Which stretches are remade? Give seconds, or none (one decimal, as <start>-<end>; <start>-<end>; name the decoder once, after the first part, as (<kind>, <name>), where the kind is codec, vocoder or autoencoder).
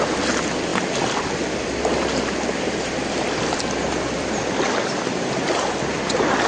none